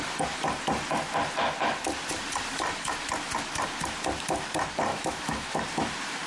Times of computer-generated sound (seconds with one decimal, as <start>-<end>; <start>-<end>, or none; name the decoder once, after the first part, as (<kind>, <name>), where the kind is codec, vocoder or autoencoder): 4.9-5.6 (autoencoder, DAC-VAE)